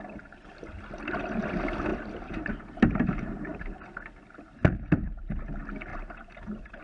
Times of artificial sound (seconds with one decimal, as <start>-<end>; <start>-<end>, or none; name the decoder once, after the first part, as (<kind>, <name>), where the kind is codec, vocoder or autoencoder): 1.9-3.7 (vocoder, BigVGAN v2); 5.9-6.8